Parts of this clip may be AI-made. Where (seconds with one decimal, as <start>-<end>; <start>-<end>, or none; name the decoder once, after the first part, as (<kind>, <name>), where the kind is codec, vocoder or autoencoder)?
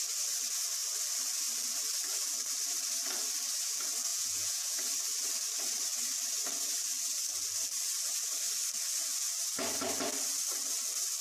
4.1-4.8 (vocoder, Vocos)